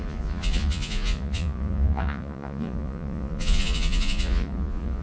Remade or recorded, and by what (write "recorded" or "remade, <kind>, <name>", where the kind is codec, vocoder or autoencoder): remade, vocoder, Vocos